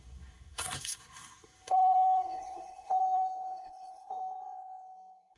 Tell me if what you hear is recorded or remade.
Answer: remade